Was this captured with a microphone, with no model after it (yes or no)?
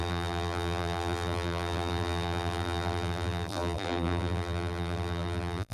no